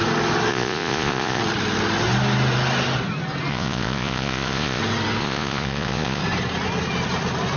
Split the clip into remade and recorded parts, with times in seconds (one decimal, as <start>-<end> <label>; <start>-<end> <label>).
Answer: 0.0-0.5 recorded; 0.5-1.4 remade; 1.4-3.5 recorded; 3.5-4.8 remade; 4.8-5.2 recorded; 5.2-6.2 remade; 6.2-7.6 recorded